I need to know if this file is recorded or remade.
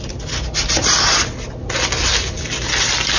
recorded